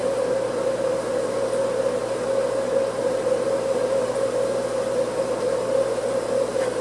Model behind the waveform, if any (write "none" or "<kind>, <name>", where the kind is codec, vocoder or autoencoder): none